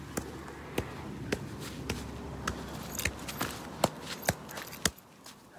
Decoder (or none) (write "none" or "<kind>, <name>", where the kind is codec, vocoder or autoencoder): none